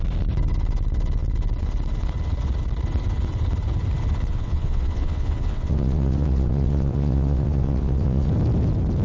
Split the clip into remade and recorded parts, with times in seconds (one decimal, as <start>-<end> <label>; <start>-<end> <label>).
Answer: 0.0-4.3 recorded; 4.3-8.3 remade; 8.3-9.0 recorded